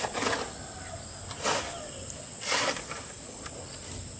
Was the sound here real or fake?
real